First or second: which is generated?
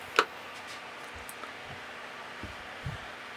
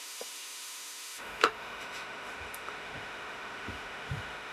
second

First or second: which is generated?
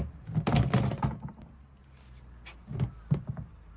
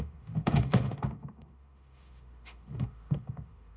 second